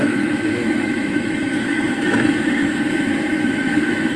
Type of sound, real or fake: fake